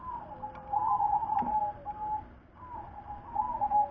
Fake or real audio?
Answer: real